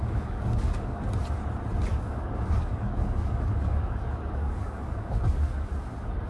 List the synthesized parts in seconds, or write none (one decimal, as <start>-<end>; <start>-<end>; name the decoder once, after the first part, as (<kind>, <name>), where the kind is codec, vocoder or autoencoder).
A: 0.0-1.0 (codec, DAC); 1.9-5.7